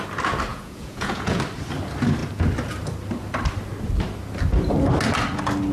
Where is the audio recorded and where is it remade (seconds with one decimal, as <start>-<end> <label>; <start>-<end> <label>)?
0.0-0.5 recorded; 0.5-1.4 remade; 1.4-5.7 recorded